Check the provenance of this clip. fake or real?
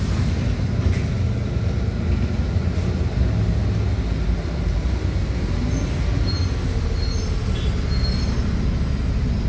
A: real